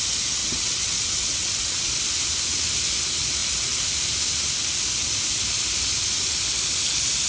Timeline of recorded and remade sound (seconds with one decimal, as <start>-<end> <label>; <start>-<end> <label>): 0.0-0.4 recorded; 0.4-1.9 remade; 1.9-7.3 recorded